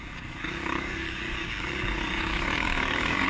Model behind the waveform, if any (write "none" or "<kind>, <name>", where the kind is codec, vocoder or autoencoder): codec, DAC